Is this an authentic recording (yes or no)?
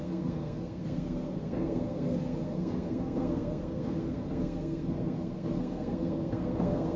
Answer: no